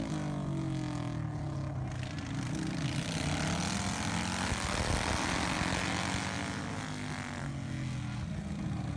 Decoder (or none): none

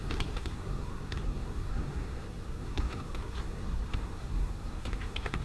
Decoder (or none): codec, SNAC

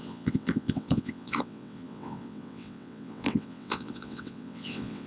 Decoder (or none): vocoder, WaveNeXt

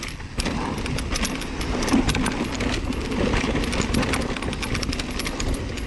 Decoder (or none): none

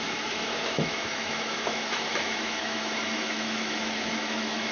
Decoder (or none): autoencoder, DAC-VAE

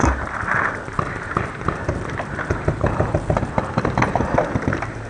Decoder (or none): none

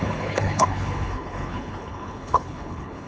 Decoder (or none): codec, HILCodec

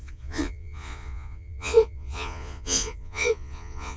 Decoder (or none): vocoder, Vocos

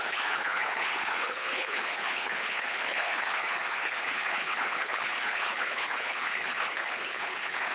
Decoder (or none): codec, HILCodec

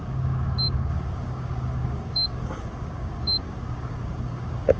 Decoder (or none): codec, DAC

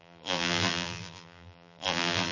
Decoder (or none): vocoder, BigVGAN v2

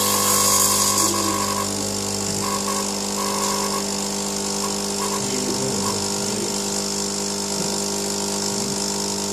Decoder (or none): none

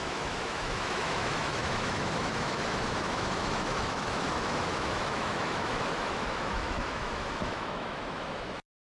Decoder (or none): autoencoder, DAC-VAE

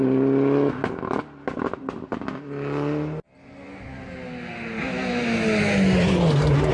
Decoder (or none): none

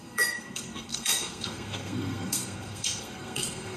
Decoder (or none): codec, SNAC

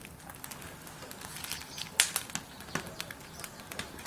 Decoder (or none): none